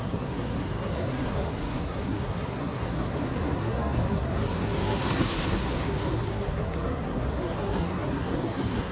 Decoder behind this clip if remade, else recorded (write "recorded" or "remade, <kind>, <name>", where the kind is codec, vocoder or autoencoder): remade, codec, SNAC